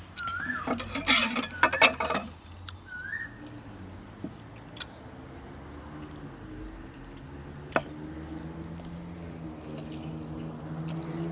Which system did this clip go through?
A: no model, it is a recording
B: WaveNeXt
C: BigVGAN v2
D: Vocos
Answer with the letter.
A